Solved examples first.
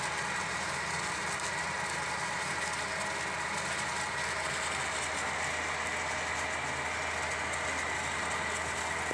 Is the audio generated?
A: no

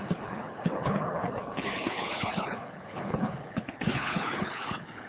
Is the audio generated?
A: yes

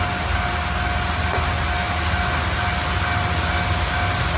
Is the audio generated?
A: no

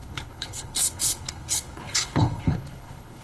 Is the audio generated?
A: yes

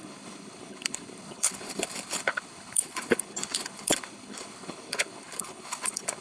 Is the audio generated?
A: yes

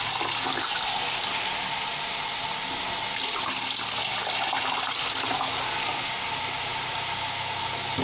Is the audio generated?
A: no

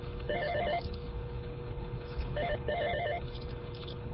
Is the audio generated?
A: yes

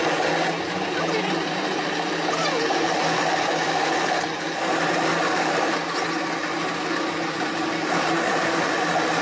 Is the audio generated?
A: no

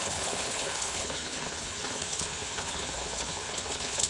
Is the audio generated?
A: yes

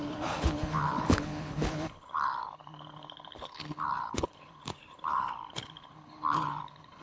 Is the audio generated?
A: yes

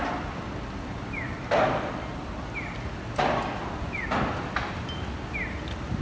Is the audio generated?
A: no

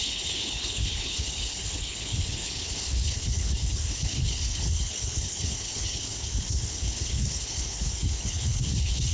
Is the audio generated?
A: yes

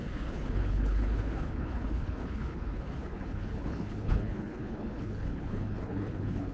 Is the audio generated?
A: yes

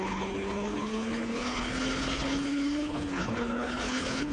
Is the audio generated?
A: yes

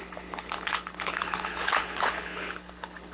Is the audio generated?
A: yes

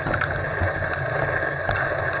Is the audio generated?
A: no